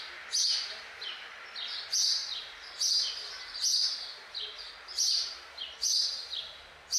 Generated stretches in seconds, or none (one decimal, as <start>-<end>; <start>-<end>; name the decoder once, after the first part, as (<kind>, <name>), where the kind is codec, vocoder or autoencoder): 1.0-1.5 (vocoder, BigVGAN v2)